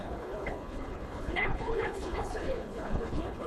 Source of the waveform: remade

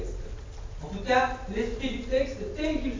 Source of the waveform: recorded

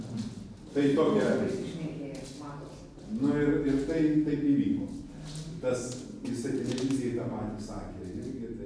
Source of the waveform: recorded